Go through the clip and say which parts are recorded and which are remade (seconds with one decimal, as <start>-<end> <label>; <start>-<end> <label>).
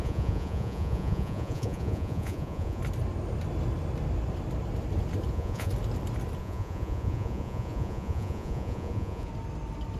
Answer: 0.0-2.8 remade; 2.8-5.3 recorded; 5.3-5.7 remade; 5.7-6.4 recorded; 6.4-9.3 remade; 9.3-10.0 recorded